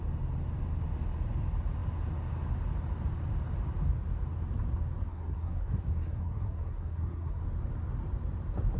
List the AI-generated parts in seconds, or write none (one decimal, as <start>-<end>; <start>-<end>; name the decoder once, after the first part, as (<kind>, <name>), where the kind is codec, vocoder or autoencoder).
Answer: 5.0-7.4 (codec, SNAC)